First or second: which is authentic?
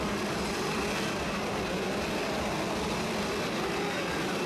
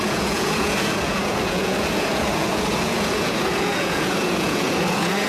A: first